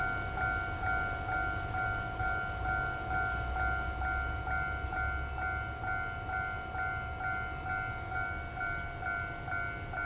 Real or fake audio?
real